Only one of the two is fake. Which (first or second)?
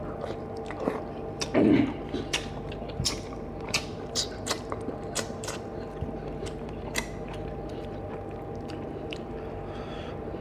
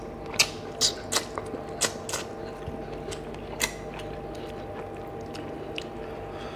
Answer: first